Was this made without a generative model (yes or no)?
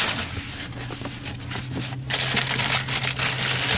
yes